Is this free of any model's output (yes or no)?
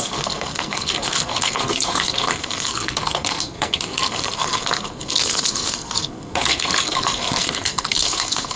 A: no